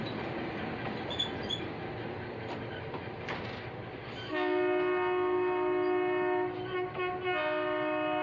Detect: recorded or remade recorded